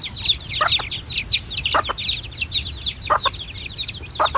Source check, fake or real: real